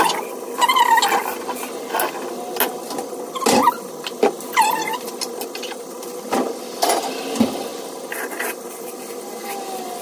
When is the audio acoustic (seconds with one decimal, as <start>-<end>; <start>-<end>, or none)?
0.0-10.0

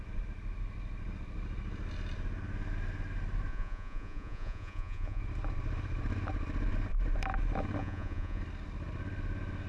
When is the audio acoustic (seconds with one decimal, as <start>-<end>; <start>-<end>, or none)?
0.0-3.5; 5.2-7.8; 8.4-9.7